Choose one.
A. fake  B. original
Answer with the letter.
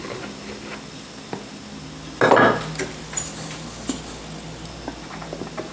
B